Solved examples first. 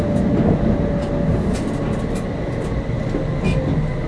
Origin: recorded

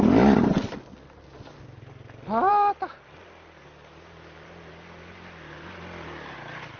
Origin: recorded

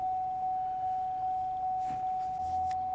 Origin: recorded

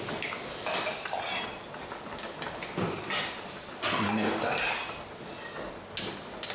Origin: recorded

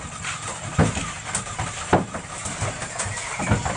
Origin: recorded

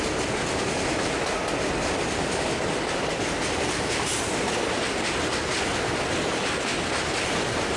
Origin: recorded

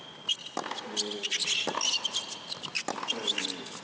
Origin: recorded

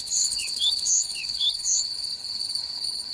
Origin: remade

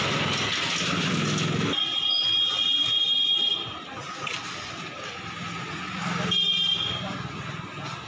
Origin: recorded